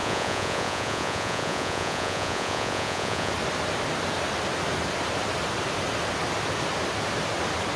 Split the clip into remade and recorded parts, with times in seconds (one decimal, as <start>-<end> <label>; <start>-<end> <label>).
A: 0.0-3.3 remade; 3.3-7.8 recorded